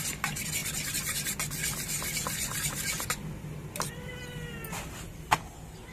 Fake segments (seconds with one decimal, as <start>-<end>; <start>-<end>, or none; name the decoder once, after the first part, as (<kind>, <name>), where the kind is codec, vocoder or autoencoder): none